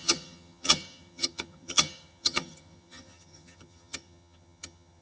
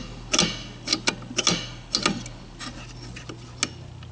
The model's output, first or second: first